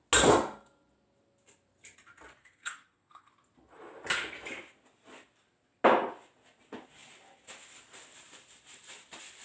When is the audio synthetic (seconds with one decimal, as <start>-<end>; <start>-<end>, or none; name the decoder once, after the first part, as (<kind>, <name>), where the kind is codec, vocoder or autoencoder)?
2.4-3.3 (codec, SNAC)